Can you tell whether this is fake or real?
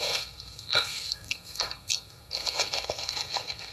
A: fake